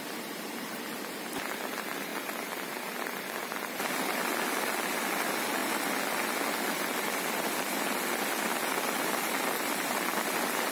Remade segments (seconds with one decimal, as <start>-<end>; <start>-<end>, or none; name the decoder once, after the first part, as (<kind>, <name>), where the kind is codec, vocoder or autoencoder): none